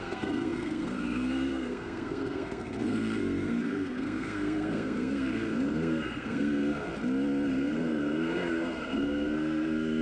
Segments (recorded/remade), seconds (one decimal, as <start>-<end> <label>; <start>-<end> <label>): 0.0-6.9 remade; 6.9-7.5 recorded; 7.5-10.0 remade